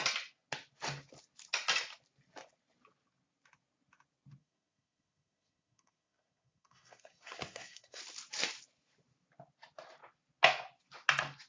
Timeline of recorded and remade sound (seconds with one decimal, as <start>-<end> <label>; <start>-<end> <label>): 0.0-4.4 recorded; 4.4-8.0 remade; 8.0-11.5 recorded